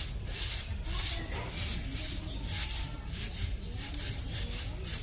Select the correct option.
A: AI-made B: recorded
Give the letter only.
A